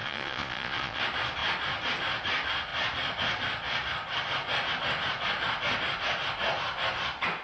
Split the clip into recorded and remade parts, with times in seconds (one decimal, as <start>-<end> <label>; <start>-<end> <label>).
0.0-1.0 remade; 1.0-7.4 recorded